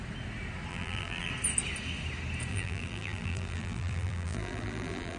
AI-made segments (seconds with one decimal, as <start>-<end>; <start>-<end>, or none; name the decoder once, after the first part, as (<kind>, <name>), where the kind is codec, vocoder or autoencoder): 0.7-1.3 (vocoder, BigVGAN v2); 2.5-5.2